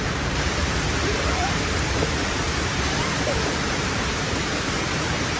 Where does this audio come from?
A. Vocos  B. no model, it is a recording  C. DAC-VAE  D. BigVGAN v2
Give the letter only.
D